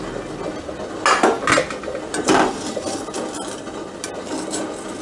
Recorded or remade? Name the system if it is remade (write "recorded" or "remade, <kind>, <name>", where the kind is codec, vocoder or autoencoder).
recorded